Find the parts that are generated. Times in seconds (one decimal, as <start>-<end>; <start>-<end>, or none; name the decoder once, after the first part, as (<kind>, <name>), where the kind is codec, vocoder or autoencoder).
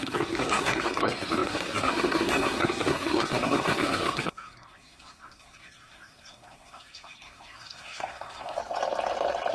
0.0-8.6 (codec, SNAC)